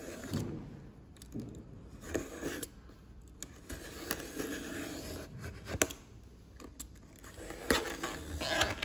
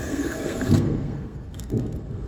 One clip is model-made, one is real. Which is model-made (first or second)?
second